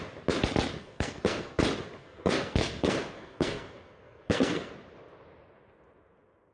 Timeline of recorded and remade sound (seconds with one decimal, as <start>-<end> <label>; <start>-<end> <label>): 0.0-0.8 recorded; 0.8-1.6 remade; 1.6-2.0 recorded; 2.0-4.7 remade; 4.7-6.5 recorded